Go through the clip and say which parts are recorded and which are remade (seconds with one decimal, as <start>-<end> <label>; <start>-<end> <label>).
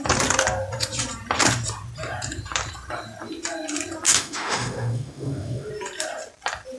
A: 0.0-4.1 recorded; 4.1-5.7 remade; 5.7-6.8 recorded